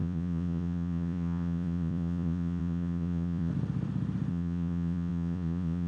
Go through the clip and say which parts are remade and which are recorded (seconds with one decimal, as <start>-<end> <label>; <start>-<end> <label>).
0.0-3.5 remade; 3.5-4.3 recorded; 4.3-5.9 remade